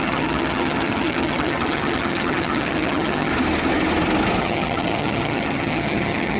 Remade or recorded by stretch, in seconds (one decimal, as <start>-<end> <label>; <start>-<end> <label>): 0.0-3.3 remade; 3.3-4.4 recorded; 4.4-6.4 remade